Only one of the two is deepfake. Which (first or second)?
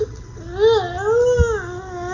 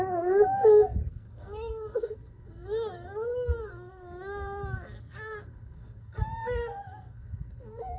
second